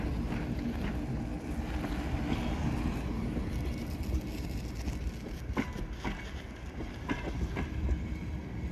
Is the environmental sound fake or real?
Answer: real